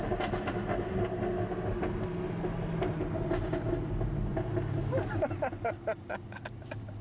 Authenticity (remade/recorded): recorded